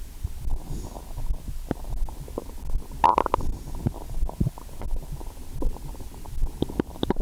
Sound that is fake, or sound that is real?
real